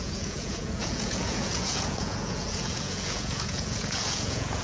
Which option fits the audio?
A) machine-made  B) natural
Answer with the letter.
A